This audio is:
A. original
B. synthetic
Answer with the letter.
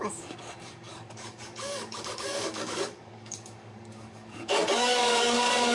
B